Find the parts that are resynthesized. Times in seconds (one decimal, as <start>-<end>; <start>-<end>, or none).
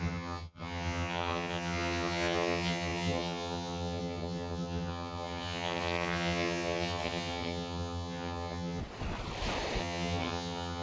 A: 0.0-8.8; 9.8-10.8